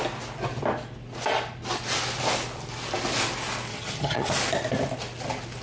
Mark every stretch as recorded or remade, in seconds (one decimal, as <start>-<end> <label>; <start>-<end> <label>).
0.0-3.7 recorded; 3.7-4.3 remade; 4.3-5.6 recorded